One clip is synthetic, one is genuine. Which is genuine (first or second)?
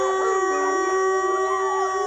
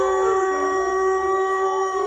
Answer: first